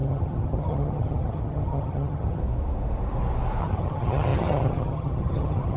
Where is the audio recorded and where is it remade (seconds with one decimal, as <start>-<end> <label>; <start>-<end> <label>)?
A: 0.0-2.4 remade; 2.4-3.6 recorded; 3.6-5.8 remade